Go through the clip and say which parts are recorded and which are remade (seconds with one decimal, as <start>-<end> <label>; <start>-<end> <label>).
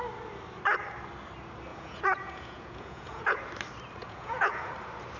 0.0-1.7 recorded; 1.7-3.4 remade; 3.4-4.0 recorded; 4.0-4.7 remade; 4.7-5.2 recorded